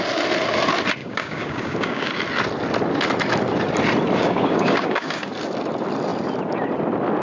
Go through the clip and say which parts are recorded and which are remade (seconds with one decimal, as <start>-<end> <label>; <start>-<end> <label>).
0.0-1.0 recorded; 1.0-2.1 remade; 2.1-4.2 recorded; 4.2-5.3 remade; 5.3-7.2 recorded